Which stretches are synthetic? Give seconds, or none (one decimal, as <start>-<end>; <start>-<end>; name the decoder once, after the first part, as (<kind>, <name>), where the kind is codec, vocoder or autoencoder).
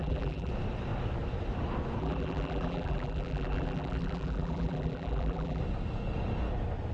0.0-0.5 (vocoder, BigVGAN v2); 2.0-5.6